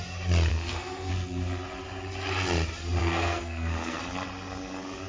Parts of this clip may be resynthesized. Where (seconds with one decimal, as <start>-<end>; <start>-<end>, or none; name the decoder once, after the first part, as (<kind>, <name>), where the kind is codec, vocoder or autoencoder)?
0.5-1.1 (codec, SNAC); 3.0-4.0